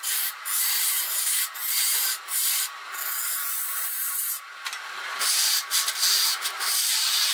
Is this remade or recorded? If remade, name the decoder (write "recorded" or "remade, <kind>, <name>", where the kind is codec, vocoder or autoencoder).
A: remade, vocoder, BigVGAN v2